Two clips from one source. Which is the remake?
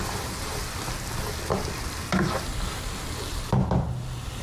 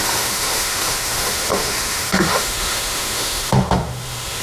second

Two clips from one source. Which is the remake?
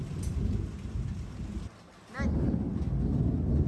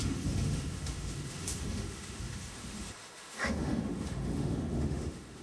second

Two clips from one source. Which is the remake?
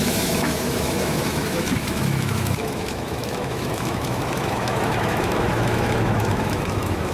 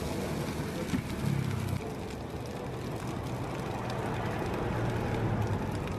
first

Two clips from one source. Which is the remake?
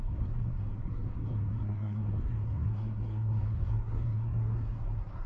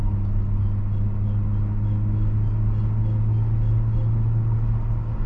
first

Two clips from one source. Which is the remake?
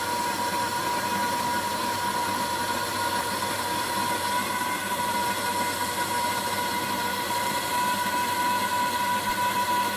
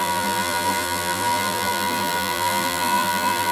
second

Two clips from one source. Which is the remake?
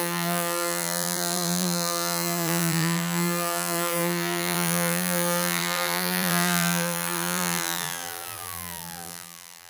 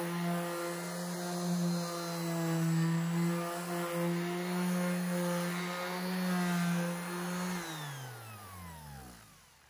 first